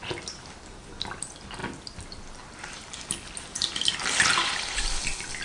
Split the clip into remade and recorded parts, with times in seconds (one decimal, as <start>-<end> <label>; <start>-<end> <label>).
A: 0.0-5.4 recorded